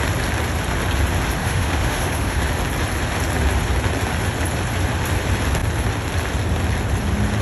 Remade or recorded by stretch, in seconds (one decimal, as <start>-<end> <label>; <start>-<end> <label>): 0.0-1.4 recorded; 1.4-2.4 remade; 2.4-7.4 recorded